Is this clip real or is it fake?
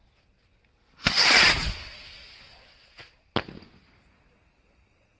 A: real